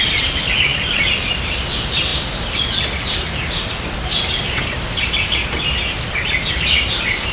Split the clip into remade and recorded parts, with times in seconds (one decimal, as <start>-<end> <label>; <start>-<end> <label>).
0.0-0.7 recorded; 0.7-1.7 remade; 1.7-7.3 recorded